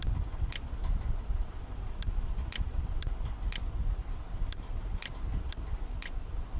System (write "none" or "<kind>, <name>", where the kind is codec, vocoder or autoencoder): none